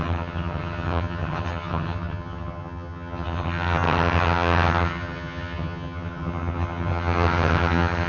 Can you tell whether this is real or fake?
fake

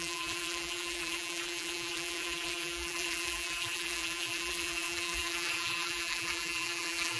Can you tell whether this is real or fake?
fake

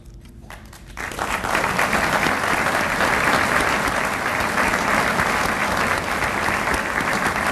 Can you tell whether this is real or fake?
real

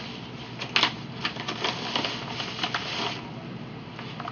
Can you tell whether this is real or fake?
real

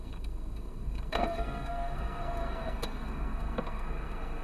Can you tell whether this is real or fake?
fake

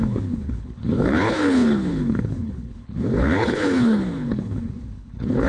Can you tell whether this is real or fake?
fake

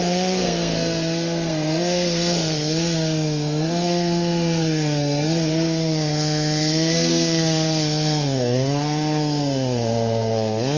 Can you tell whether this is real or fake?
fake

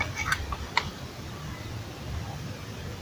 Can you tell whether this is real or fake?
real